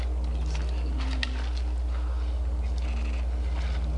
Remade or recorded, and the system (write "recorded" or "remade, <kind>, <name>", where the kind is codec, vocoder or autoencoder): recorded